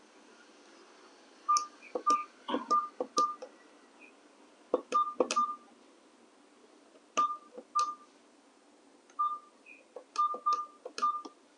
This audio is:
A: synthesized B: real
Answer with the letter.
B